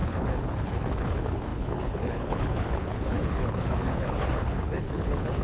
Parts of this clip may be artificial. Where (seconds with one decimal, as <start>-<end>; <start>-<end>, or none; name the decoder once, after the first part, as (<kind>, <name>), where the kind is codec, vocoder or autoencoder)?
0.0-5.4 (codec, HILCodec)